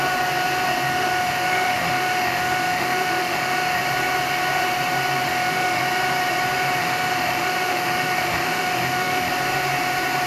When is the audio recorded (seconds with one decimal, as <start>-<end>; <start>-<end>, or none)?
0.0-0.9; 3.8-5.3; 5.8-6.8; 9.3-10.3